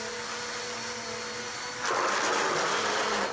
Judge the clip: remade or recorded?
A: recorded